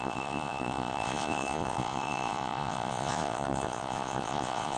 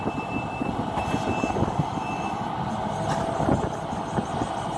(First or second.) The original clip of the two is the second